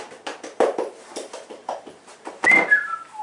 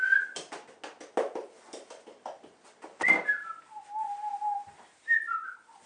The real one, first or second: second